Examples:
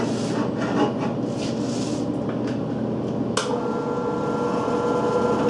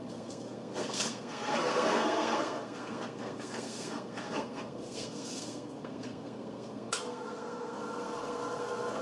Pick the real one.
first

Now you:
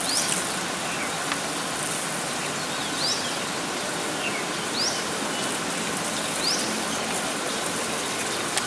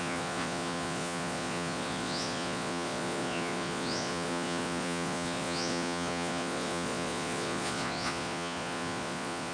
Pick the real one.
first